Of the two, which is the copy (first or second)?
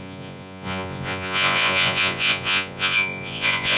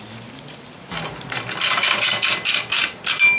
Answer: first